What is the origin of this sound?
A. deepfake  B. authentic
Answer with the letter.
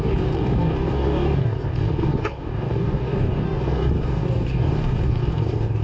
A